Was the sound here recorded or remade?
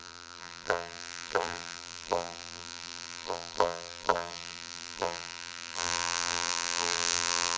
remade